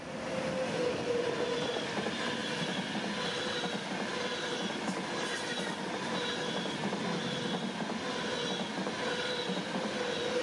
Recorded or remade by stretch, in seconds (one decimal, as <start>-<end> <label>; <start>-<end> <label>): 0.0-10.4 recorded

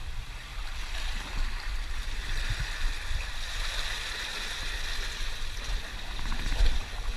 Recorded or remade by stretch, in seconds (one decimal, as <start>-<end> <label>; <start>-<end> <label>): 0.0-0.5 recorded; 0.5-3.3 remade; 3.3-7.2 recorded

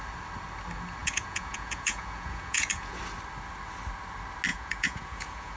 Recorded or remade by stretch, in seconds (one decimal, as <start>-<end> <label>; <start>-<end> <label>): 0.0-1.0 recorded; 1.0-3.0 remade; 3.0-4.5 recorded; 4.5-5.6 remade

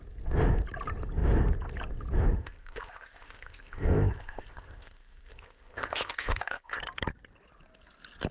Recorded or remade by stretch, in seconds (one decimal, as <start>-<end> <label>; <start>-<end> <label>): 0.0-2.4 recorded; 2.4-6.8 remade; 6.8-8.3 recorded

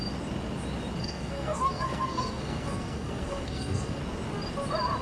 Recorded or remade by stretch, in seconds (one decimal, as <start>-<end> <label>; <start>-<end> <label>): 0.0-1.0 recorded; 1.0-4.0 remade; 4.0-5.0 recorded

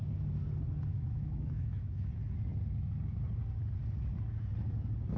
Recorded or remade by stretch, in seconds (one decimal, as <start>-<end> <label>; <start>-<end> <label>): 0.0-0.9 recorded; 0.9-2.1 remade; 2.1-5.2 recorded

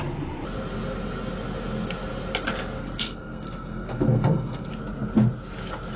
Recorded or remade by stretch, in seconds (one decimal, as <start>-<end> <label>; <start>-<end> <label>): 0.0-2.8 recorded; 2.8-4.7 remade; 4.7-6.0 recorded